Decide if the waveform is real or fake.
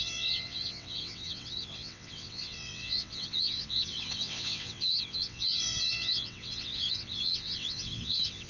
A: fake